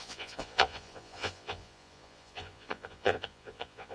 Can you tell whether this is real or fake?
fake